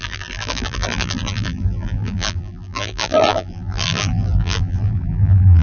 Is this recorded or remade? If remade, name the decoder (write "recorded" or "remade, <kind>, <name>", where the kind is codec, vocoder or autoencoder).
remade, vocoder, BigVGAN v2